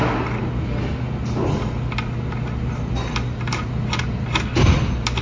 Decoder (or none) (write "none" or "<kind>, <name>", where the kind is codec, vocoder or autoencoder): none